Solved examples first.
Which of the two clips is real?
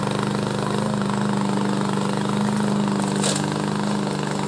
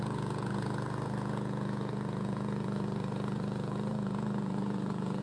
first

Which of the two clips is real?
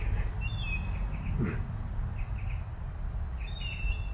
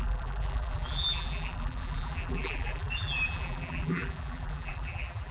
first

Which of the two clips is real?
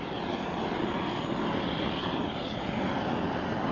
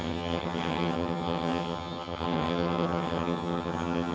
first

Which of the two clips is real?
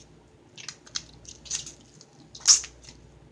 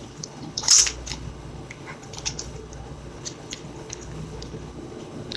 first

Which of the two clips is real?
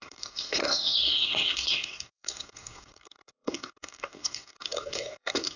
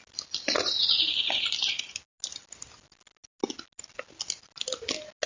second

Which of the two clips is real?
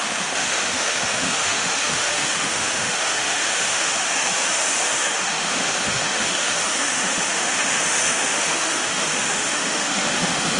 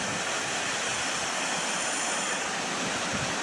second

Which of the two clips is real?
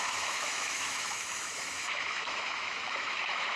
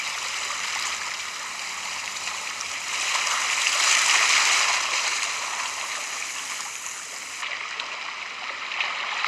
second